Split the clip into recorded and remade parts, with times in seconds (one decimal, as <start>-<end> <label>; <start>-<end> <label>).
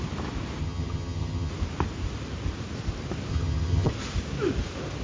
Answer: 0.0-0.6 recorded; 0.6-1.5 remade; 1.5-3.3 recorded; 3.3-3.9 remade; 3.9-5.0 recorded